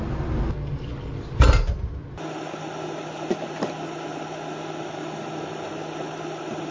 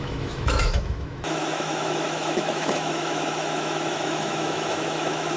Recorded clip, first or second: first